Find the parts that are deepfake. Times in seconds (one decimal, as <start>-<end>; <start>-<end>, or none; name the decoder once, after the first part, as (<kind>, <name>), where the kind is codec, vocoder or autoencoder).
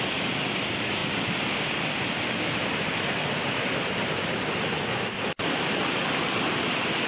none